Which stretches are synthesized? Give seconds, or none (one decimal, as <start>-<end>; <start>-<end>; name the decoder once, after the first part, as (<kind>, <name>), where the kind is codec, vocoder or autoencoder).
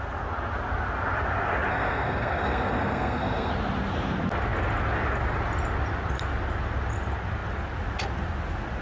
1.7-3.5 (codec, SNAC)